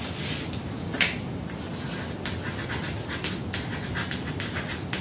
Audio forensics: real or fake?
real